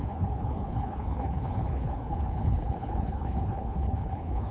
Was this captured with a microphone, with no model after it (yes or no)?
no